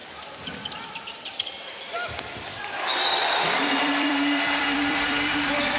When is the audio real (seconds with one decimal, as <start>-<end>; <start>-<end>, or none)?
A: none